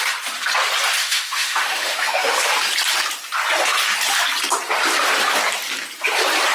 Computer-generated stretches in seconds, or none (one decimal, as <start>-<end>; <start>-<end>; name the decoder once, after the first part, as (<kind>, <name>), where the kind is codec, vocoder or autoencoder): 1.0-2.4 (autoencoder, DAC-VAE)